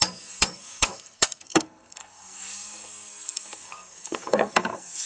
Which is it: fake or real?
fake